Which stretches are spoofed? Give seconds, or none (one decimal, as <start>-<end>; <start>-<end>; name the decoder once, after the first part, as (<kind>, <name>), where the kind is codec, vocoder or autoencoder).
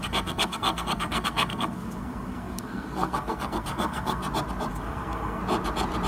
0.0-4.2 (codec, SNAC); 4.7-5.4